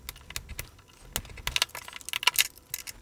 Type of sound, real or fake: real